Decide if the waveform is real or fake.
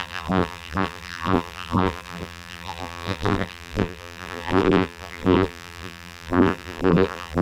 fake